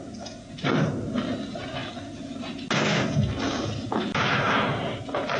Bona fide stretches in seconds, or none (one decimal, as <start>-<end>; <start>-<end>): 0.0-5.4